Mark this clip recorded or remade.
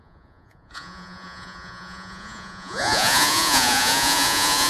remade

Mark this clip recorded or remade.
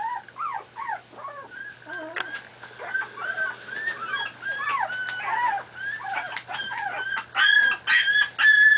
recorded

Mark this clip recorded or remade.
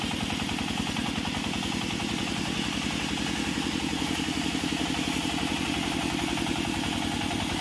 recorded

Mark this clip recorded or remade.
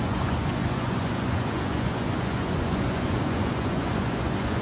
remade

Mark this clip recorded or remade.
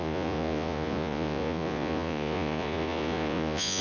remade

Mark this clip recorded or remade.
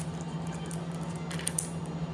recorded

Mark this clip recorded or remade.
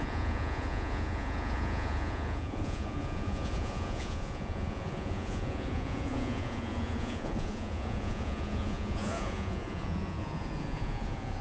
remade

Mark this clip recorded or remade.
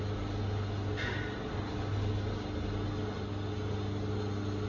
recorded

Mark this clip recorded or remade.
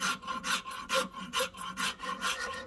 remade